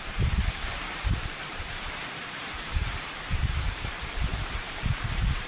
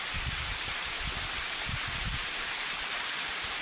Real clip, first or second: second